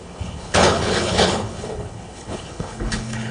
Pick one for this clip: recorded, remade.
remade